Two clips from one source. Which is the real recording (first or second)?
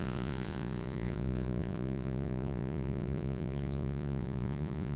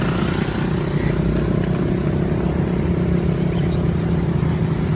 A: second